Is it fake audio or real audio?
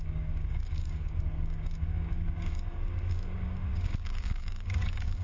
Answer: fake